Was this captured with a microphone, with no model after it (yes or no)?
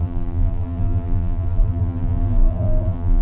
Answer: no